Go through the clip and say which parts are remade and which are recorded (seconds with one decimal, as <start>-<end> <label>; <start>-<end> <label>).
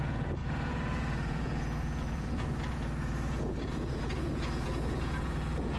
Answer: 0.0-5.8 remade